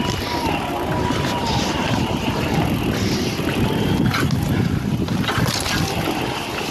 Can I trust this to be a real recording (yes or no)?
yes